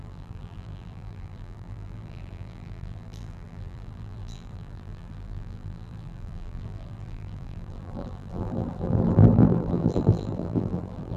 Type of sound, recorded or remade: remade